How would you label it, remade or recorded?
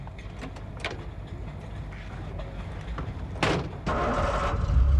recorded